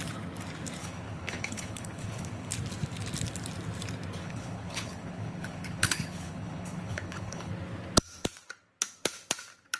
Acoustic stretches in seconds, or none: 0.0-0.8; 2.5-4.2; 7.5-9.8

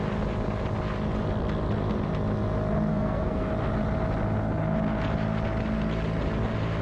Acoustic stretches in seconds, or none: 0.0-2.9; 3.5-6.8

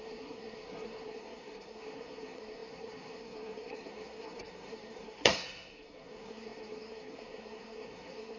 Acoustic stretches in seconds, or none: none

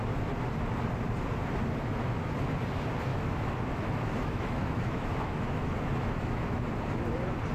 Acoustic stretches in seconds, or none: 0.0-3.1; 6.6-7.5

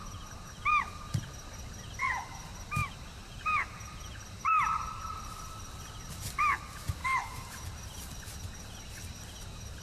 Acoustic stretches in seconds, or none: 0.5-2.8; 5.2-7.0; 7.9-9.8

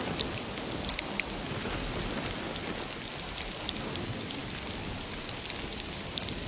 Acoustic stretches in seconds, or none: 0.0-6.5

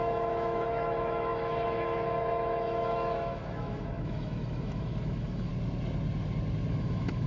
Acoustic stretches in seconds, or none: 5.5-6.7